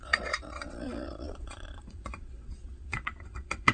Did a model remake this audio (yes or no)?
yes